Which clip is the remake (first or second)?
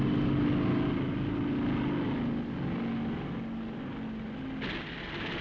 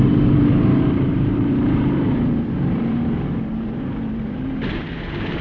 second